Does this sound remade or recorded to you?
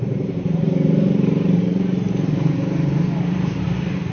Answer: remade